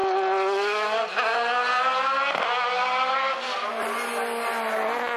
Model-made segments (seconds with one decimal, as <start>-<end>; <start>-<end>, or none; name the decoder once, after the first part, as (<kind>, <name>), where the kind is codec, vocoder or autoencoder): none